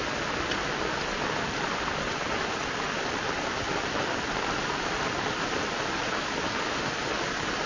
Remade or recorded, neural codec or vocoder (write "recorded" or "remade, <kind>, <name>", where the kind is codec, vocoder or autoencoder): recorded